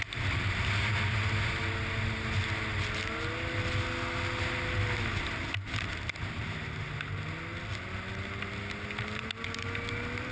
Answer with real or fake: real